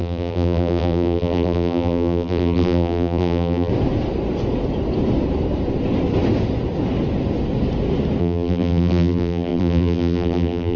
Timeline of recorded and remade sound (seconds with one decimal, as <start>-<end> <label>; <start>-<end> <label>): 0.0-3.7 remade; 3.7-8.2 recorded; 8.2-10.8 remade